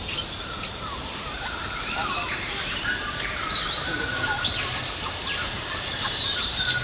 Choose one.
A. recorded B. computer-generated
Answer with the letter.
B